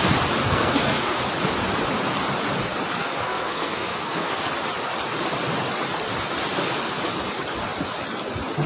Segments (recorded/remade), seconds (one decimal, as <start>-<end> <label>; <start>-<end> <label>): 0.0-0.4 recorded; 0.4-1.2 remade; 1.2-3.0 recorded; 3.0-4.5 remade; 4.5-8.7 recorded